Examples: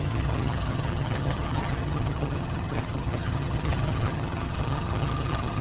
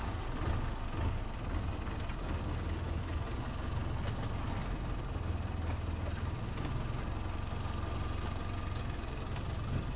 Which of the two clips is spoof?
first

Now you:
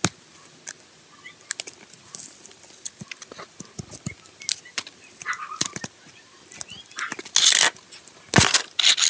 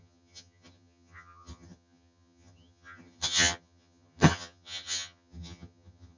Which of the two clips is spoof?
second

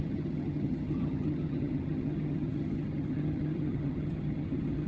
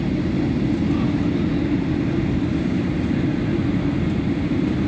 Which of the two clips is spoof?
first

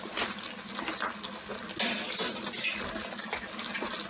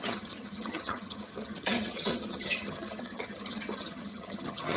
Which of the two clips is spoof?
second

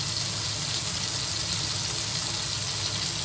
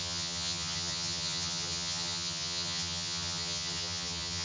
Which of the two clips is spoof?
second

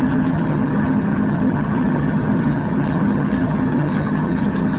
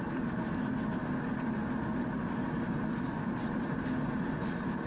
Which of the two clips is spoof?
first